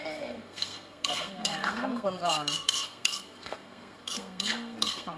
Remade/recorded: remade